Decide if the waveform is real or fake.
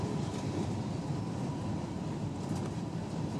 fake